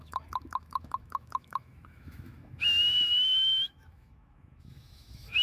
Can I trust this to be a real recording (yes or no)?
no